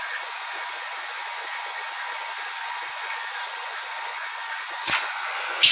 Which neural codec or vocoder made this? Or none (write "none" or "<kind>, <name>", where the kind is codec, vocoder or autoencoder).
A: vocoder, Vocos